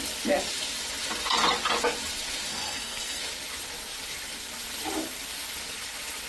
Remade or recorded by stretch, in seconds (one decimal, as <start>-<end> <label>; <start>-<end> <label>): 0.0-2.5 recorded; 2.5-3.2 remade; 3.2-6.3 recorded

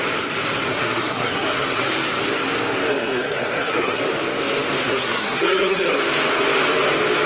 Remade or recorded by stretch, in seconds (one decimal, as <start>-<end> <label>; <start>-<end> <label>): 0.0-0.7 recorded; 0.7-1.8 remade; 1.8-2.9 recorded; 2.9-4.0 remade; 4.0-4.8 recorded; 4.8-6.0 remade; 6.0-7.3 recorded

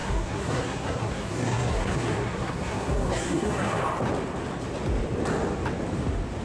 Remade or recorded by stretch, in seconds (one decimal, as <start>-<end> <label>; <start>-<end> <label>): 0.0-3.8 remade; 3.8-6.4 recorded

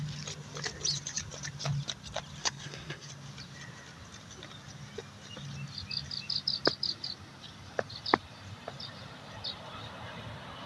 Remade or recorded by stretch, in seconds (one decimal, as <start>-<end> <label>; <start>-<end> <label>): 0.0-2.4 recorded; 2.4-3.1 remade; 3.1-10.7 recorded

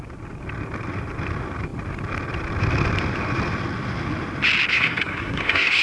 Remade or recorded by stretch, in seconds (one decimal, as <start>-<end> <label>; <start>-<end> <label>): 0.0-4.7 recorded; 4.7-5.8 remade

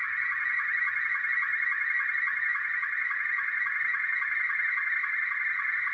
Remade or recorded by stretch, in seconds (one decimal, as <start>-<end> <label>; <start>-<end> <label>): 0.0-5.9 recorded

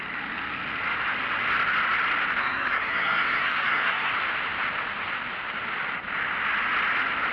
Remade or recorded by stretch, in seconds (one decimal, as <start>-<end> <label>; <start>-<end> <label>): 0.0-2.4 recorded; 2.4-4.1 remade; 4.1-7.3 recorded